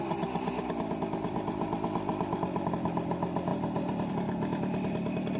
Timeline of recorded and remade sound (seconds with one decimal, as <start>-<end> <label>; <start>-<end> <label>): 0.0-5.4 recorded